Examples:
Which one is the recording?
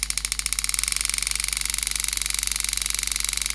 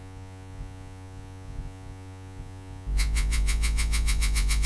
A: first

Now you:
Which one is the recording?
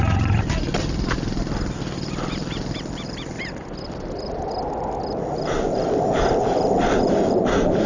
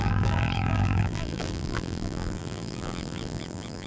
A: first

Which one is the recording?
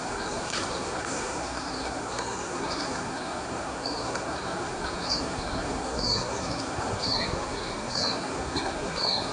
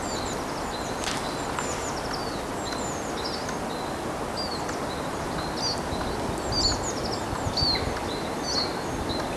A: second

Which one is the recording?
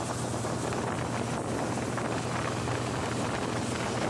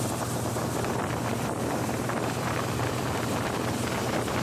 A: first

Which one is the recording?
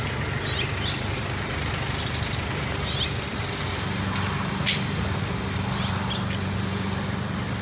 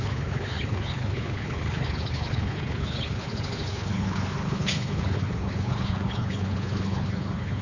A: first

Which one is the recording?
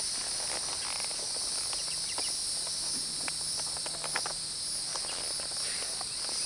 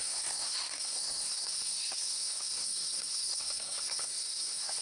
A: first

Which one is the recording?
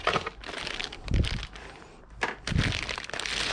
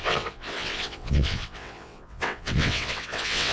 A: first